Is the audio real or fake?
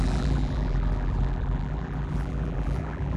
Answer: fake